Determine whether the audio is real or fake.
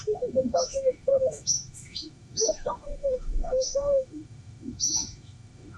fake